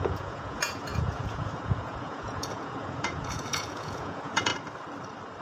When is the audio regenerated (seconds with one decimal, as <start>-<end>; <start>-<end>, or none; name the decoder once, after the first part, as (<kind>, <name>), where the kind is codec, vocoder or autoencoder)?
0.0-4.5 (vocoder, Vocos)